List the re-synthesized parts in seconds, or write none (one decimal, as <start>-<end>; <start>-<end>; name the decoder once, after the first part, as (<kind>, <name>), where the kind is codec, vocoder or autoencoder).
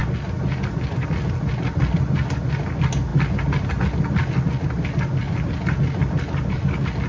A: none